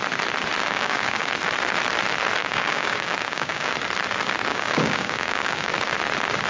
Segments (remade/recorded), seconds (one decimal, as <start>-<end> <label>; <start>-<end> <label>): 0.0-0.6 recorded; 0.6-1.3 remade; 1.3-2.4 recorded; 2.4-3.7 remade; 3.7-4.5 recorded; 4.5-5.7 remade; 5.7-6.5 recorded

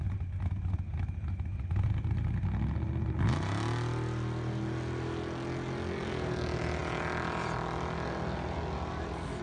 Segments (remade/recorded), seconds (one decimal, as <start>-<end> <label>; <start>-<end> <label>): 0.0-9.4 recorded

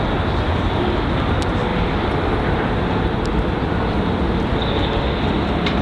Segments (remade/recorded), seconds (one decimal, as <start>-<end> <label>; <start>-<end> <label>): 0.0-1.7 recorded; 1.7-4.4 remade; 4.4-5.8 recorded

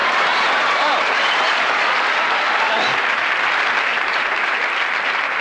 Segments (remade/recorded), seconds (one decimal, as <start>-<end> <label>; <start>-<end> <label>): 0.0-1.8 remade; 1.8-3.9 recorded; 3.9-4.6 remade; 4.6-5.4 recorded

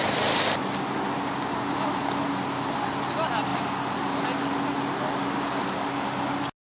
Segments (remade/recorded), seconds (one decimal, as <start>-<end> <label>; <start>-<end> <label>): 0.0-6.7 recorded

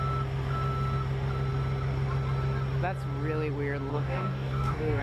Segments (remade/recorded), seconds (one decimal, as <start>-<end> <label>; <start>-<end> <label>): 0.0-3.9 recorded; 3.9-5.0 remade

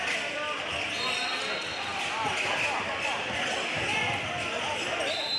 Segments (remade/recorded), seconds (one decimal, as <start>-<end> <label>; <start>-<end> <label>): 0.0-5.4 recorded